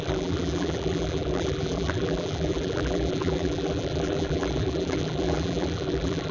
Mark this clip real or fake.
fake